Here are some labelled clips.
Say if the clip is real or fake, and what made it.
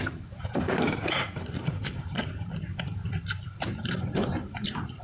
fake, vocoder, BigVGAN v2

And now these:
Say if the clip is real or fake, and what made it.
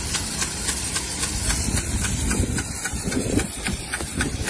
real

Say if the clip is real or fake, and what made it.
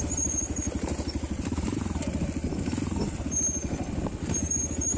real